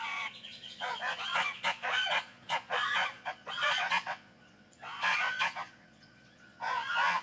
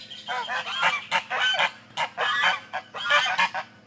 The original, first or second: second